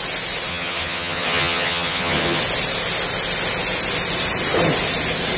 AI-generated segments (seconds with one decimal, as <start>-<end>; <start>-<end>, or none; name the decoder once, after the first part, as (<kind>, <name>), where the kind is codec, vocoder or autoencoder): 0.5-2.4 (vocoder, HiFi-GAN)